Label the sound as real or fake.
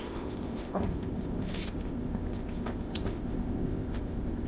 fake